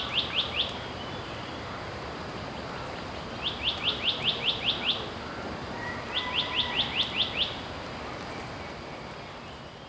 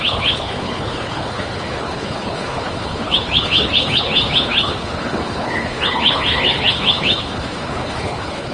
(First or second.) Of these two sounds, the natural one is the first